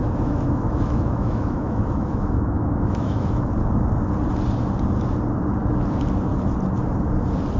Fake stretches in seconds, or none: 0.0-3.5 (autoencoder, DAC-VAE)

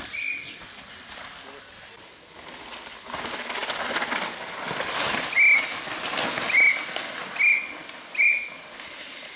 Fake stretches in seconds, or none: none

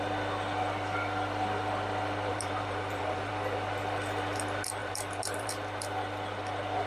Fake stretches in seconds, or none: 2.3-3.3 (vocoder, BigVGAN v2); 4.8-5.5

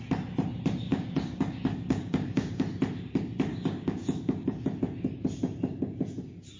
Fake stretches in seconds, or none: 0.9-2.7 (codec, DAC); 3.5-4.8

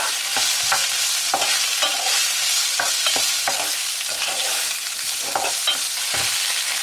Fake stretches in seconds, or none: none